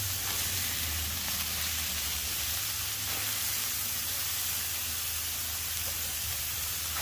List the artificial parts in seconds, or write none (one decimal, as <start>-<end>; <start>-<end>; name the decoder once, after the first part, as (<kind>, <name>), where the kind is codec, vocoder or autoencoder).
0.0-2.2 (vocoder, BigVGAN v2); 6.0-7.0